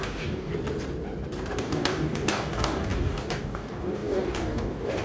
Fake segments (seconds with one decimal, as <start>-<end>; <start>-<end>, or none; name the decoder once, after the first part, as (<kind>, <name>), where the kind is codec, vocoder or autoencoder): 0.0-0.5 (codec, DAC); 1.6-5.0